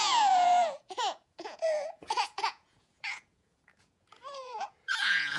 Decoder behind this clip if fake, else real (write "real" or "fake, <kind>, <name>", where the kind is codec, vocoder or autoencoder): fake, vocoder, Vocos